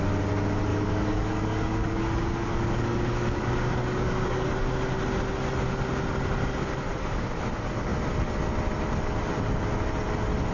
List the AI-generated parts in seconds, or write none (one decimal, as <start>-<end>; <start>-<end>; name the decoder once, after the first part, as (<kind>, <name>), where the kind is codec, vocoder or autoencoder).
0.7-4.5 (codec, DAC)